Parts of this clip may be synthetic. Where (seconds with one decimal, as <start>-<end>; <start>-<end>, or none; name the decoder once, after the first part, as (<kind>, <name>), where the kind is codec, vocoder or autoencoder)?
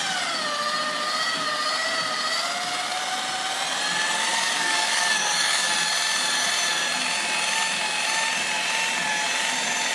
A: 4.3-5.7 (codec, DAC)